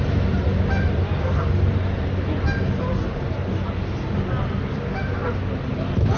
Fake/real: real